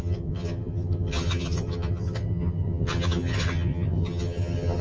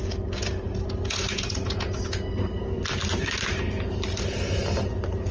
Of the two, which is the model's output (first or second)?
first